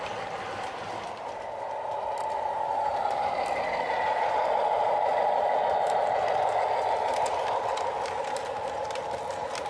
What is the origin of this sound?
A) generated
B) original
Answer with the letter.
B